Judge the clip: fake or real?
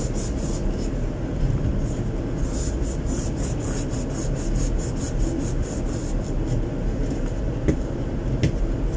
real